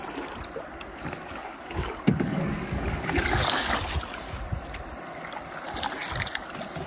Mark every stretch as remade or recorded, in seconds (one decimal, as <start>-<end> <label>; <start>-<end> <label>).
0.0-0.9 recorded; 0.9-3.7 remade; 3.7-6.9 recorded